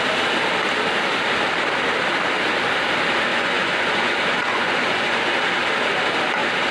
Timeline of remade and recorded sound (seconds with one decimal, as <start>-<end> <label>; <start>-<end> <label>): 0.0-3.3 recorded; 3.3-5.3 remade; 5.3-6.7 recorded